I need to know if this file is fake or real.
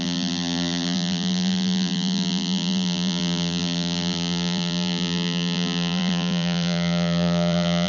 fake